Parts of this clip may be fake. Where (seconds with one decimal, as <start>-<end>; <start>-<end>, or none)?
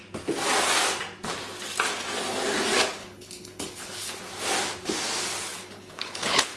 3.0-4.2; 5.5-6.6